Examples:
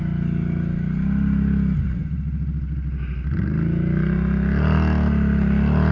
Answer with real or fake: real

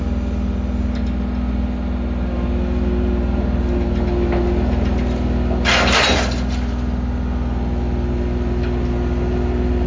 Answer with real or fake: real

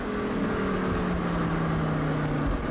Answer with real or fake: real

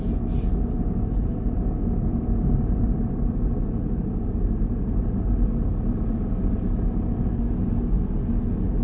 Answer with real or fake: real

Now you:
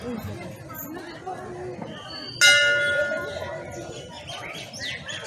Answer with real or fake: real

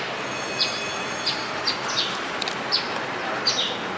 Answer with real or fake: real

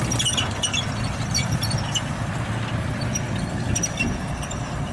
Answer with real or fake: fake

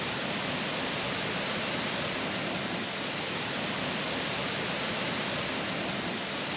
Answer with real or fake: real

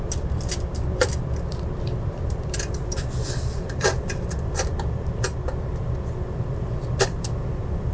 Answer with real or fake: fake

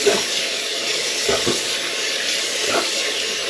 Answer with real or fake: fake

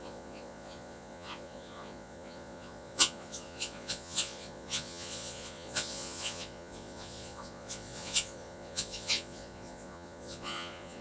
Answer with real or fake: fake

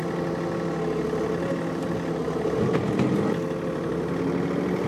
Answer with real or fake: real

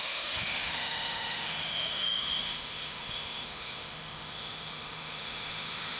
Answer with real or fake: fake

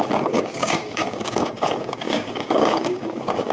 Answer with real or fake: fake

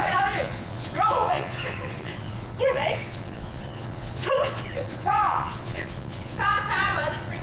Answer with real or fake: fake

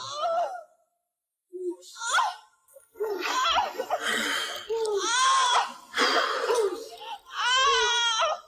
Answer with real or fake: real